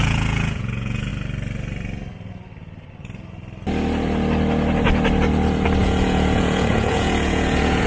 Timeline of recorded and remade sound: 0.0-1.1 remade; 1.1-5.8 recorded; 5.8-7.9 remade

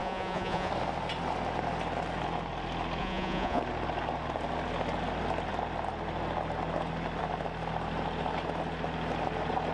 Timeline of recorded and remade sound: 0.0-0.7 remade; 0.7-3.0 recorded; 3.0-3.6 remade; 3.6-9.7 recorded

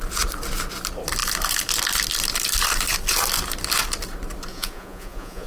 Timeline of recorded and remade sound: 0.0-4.5 recorded; 4.5-5.5 remade

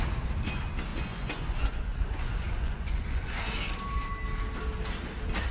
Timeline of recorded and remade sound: 0.0-0.9 recorded; 0.9-3.5 remade; 3.5-5.5 recorded

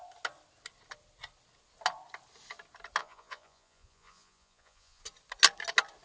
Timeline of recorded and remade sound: 0.0-3.0 recorded; 3.0-5.0 remade; 5.0-6.0 recorded